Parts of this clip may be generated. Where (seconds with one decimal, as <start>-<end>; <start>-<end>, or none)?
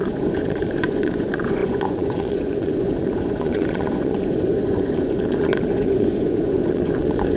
0.0-7.4